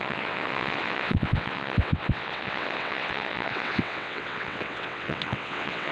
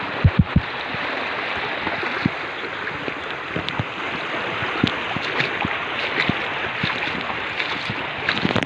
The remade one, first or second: first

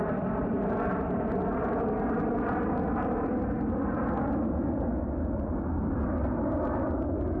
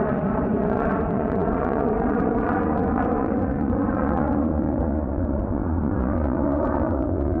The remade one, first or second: second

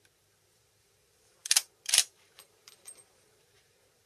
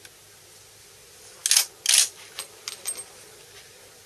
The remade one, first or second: first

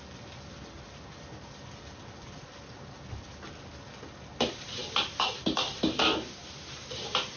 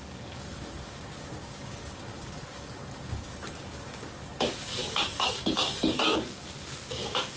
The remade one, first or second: second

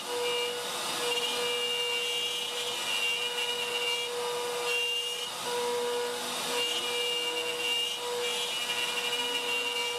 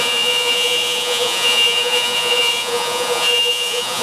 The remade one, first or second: second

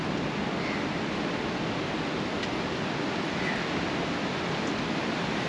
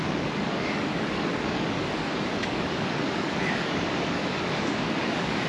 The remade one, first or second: second